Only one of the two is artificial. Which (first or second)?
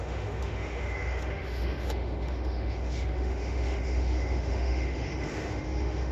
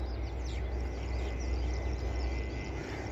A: first